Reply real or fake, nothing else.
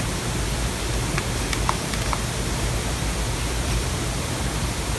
real